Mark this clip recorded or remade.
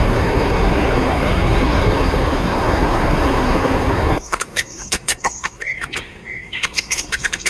remade